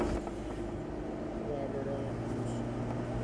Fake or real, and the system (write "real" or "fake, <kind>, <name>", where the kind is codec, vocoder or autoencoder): real